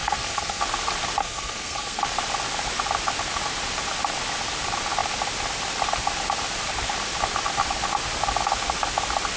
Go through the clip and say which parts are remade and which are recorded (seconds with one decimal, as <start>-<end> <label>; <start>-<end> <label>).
0.0-0.6 remade; 0.6-1.2 recorded; 1.2-2.0 remade; 2.0-9.4 recorded